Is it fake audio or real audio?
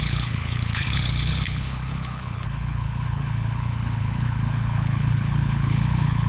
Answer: fake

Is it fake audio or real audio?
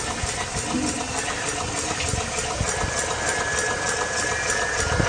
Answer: real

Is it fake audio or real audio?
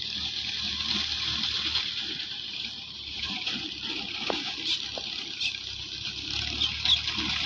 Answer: real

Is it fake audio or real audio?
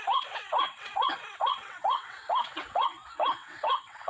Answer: fake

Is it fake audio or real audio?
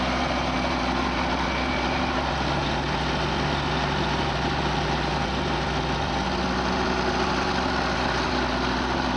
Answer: real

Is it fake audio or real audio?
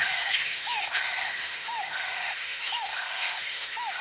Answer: fake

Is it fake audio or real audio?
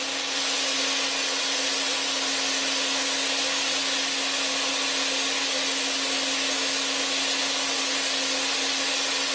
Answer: real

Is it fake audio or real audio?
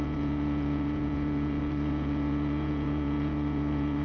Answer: fake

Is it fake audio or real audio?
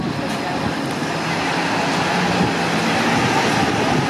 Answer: real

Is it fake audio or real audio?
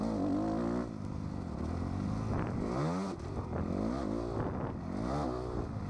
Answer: real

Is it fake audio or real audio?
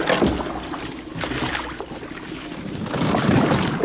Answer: real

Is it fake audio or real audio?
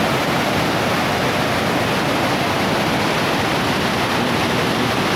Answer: real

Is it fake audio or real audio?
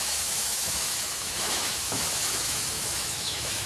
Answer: fake